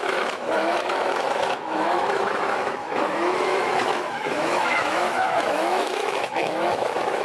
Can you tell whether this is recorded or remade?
remade